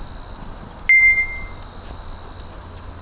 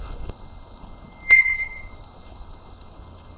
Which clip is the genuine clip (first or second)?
first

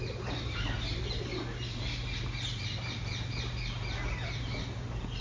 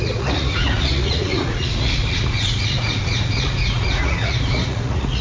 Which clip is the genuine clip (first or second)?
first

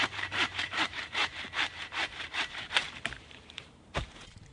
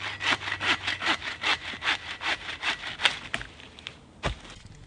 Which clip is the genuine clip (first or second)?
second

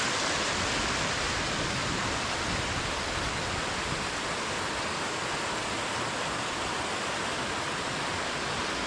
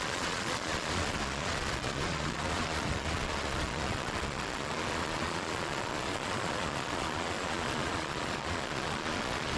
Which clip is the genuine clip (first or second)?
first